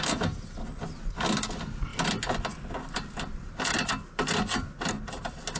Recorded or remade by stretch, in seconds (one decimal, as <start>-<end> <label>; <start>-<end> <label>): 0.0-5.6 recorded